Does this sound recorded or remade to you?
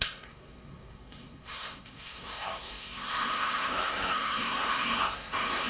remade